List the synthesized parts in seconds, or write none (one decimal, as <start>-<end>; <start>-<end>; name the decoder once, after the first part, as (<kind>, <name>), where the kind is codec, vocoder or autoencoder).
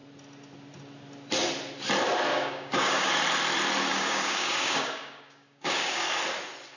2.3-3.1 (codec, DAC); 3.9-6.2